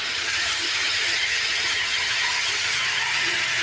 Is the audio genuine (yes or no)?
no